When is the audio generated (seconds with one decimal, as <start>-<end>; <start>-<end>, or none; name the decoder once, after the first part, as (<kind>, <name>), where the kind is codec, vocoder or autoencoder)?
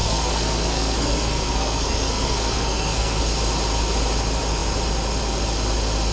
0.0-3.2 (codec, SNAC)